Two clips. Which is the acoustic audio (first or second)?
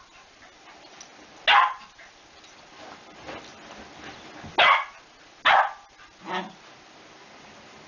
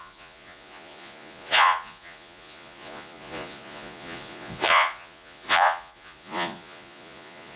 first